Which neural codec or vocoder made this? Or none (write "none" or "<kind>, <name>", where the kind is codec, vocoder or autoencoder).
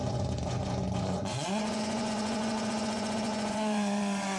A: vocoder, Vocos